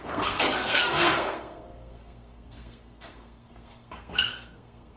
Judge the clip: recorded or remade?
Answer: remade